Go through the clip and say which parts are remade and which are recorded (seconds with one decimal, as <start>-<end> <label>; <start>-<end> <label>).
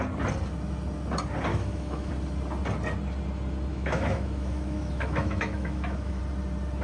0.0-1.5 recorded; 1.5-2.1 remade; 2.1-3.7 recorded; 3.7-6.2 remade; 6.2-6.8 recorded